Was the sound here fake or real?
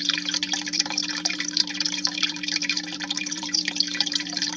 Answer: fake